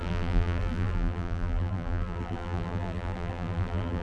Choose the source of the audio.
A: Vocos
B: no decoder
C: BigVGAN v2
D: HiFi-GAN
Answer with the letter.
C